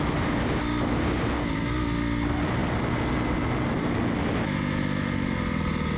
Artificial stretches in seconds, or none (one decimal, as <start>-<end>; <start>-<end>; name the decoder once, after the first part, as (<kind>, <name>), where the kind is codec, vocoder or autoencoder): none